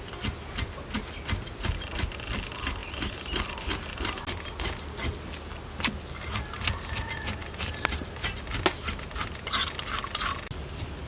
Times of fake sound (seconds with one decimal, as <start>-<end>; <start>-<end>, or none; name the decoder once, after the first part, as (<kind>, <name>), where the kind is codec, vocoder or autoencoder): none